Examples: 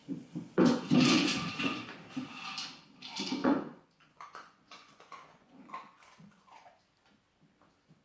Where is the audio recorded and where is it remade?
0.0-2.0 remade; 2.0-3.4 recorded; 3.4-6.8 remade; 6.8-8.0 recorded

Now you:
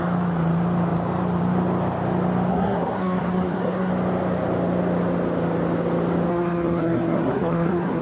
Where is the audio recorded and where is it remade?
0.0-2.5 recorded; 2.5-3.9 remade; 3.9-6.3 recorded; 6.3-8.0 remade